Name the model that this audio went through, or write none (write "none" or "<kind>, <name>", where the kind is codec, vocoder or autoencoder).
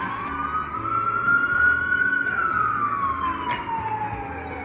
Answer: none